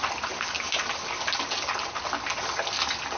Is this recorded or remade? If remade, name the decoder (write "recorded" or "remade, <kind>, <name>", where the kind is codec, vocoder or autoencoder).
recorded